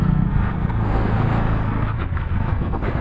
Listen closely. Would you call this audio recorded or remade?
remade